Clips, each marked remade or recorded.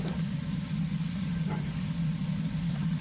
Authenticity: recorded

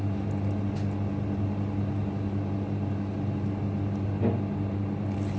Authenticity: recorded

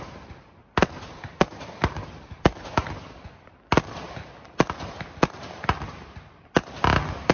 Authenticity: remade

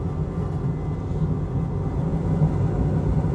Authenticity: recorded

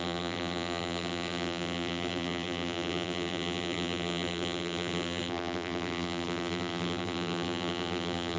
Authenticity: remade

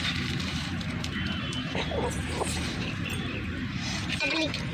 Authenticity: remade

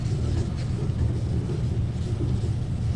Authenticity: recorded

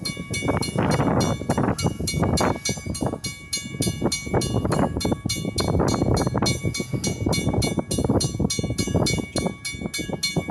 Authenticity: recorded